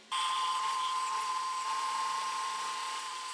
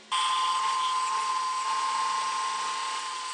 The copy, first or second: first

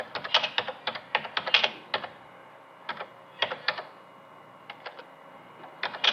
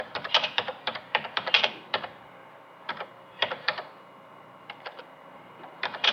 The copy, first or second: second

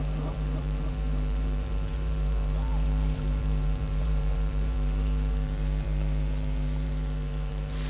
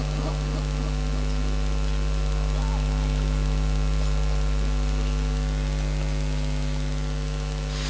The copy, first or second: first